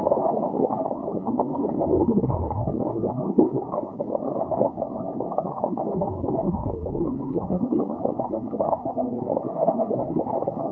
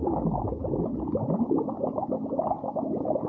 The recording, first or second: second